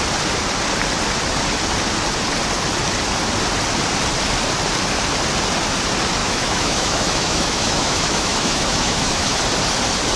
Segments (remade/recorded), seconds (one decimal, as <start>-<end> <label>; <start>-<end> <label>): 0.0-6.2 recorded; 6.2-9.4 remade; 9.4-10.2 recorded